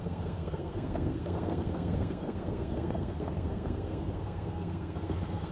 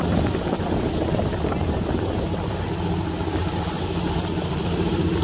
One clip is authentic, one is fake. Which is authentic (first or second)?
second